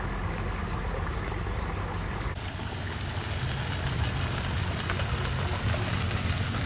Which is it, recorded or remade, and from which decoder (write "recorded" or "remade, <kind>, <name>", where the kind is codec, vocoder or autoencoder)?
recorded